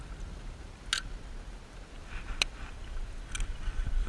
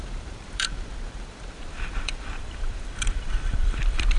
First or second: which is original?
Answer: first